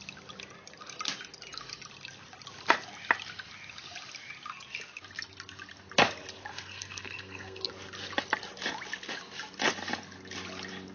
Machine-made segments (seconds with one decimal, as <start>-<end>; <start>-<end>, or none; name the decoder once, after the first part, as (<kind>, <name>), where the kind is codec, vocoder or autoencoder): 6.5-7.7 (codec, SNAC)